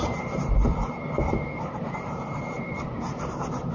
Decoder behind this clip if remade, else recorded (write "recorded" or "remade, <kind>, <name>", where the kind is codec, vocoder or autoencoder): remade, vocoder, BigVGAN v2